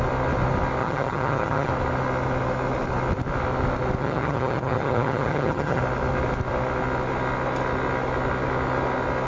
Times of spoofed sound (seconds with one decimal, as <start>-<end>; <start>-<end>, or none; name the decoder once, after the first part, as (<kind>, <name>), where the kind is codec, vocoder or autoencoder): 0.8-1.7 (vocoder, HiFi-GAN); 4.0-5.8